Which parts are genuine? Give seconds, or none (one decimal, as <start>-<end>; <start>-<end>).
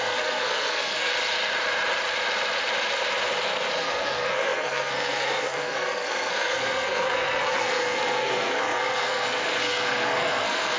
1.1-3.8